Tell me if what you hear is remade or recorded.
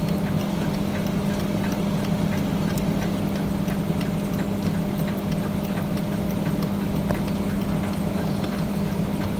recorded